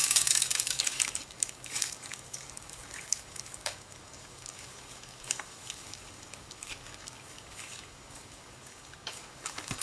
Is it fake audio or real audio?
fake